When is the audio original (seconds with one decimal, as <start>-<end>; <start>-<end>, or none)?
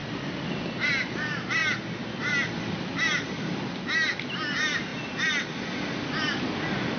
0.0-7.0